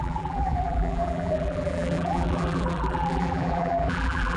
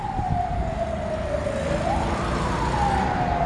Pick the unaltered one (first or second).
second